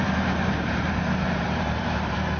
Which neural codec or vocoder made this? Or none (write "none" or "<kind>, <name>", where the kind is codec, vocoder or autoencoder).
vocoder, BigVGAN v2